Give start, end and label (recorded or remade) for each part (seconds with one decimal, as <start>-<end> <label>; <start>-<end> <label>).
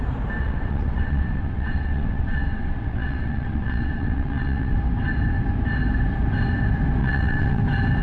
0.0-0.4 recorded; 0.4-4.8 remade; 4.8-7.0 recorded; 7.0-7.6 remade; 7.6-8.0 recorded